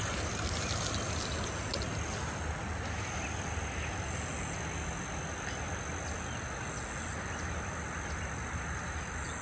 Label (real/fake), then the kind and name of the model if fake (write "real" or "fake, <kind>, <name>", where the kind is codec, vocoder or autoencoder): real